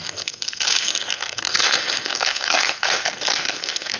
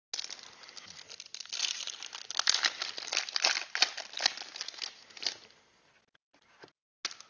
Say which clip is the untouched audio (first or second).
second